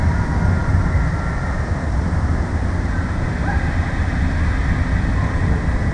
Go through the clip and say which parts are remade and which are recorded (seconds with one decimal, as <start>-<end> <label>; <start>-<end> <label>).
0.0-0.6 recorded; 0.6-4.1 remade; 4.1-5.9 recorded